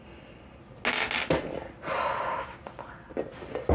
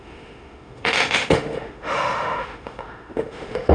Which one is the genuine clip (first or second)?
first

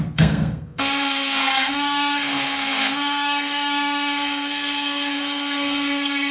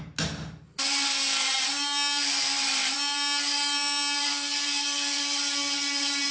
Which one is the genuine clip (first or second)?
second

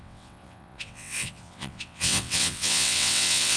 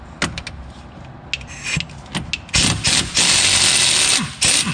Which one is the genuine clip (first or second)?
second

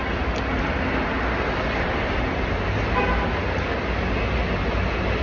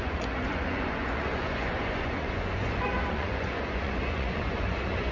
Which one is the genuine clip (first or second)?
first